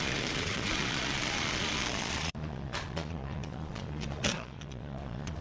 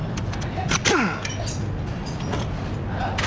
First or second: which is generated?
first